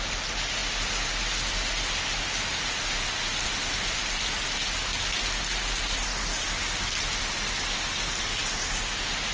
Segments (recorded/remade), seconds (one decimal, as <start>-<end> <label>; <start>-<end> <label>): 0.0-9.3 recorded